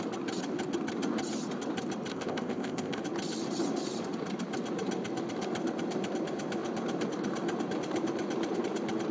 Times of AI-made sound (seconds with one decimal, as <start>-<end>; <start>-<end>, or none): 2.1-3.0